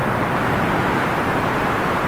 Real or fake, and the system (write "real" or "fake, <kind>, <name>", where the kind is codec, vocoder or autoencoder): real